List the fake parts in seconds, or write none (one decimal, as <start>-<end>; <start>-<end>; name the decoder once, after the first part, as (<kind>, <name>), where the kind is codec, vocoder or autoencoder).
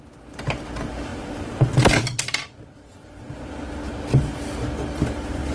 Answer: none